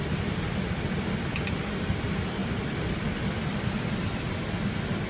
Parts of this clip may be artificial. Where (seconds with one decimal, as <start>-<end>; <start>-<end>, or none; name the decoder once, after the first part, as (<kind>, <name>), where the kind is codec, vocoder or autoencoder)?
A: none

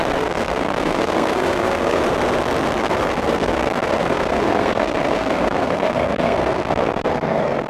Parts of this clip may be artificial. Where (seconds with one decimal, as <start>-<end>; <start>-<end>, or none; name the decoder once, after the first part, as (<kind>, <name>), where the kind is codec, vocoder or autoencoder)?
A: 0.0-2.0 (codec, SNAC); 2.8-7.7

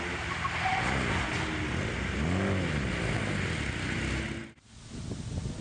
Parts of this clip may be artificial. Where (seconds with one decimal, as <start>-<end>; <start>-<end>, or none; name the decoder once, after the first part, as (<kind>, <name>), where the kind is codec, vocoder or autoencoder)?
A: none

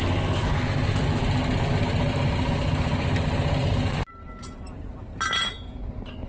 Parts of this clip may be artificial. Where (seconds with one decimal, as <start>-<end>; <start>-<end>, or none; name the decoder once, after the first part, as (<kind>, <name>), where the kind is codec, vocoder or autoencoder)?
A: none

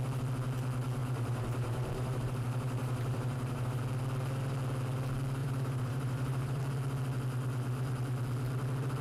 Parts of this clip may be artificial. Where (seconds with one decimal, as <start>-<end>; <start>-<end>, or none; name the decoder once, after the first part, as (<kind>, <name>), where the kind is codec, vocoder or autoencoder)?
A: 1.0-3.8 (vocoder, BigVGAN v2); 5.4-6.6

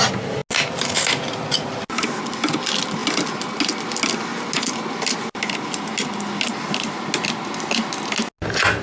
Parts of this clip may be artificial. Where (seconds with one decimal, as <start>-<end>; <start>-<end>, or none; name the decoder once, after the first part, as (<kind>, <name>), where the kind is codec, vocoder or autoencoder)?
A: none

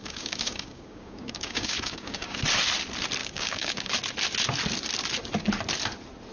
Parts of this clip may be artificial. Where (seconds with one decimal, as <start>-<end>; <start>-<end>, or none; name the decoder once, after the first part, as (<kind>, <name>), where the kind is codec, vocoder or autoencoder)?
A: 0.0-2.4 (codec, DAC); 3.2-3.9